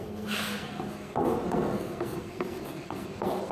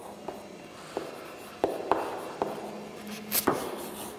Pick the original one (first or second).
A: second